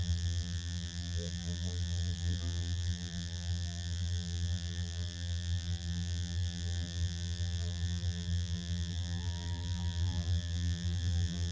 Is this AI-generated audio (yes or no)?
yes